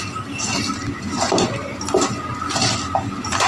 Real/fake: real